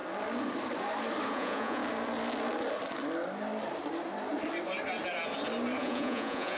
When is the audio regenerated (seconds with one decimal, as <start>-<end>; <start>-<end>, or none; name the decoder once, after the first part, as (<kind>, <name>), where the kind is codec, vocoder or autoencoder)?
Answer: 1.3-1.8 (vocoder, Vocos); 5.8-6.6